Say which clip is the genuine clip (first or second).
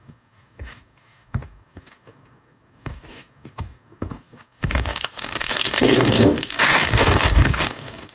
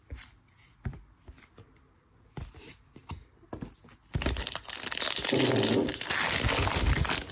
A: second